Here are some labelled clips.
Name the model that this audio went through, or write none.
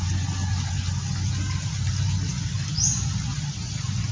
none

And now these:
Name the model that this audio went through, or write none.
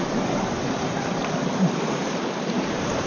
vocoder, BigVGAN v2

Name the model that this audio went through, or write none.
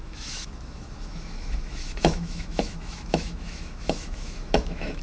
autoencoder, DAC-VAE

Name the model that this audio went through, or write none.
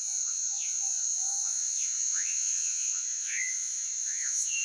vocoder, Vocos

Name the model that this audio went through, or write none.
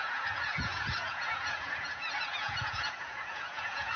vocoder, Vocos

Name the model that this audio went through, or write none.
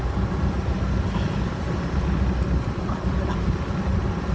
none